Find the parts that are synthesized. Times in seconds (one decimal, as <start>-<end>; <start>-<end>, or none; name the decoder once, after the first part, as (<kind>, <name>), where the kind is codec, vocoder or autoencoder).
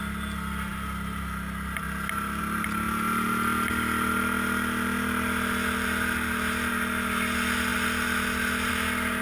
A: none